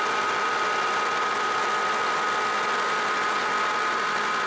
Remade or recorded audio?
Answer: recorded